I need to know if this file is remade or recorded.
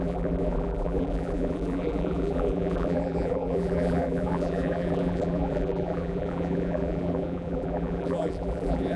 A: remade